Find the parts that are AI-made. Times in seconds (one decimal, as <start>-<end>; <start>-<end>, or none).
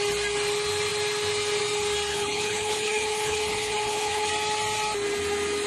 2.1-4.3